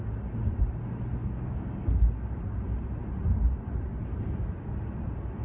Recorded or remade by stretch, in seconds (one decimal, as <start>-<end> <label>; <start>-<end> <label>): 0.0-1.2 recorded; 1.2-2.1 remade; 2.1-5.4 recorded